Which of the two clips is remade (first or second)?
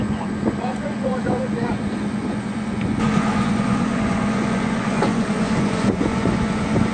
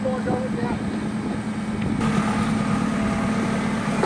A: first